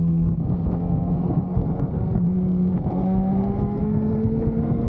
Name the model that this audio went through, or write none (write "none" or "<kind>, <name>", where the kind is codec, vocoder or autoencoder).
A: codec, SNAC